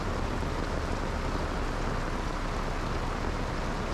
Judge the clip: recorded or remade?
recorded